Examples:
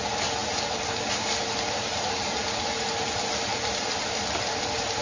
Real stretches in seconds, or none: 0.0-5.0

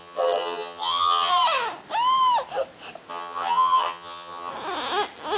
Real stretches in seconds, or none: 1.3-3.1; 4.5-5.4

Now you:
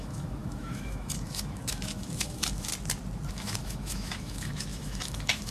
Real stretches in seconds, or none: 2.7-3.3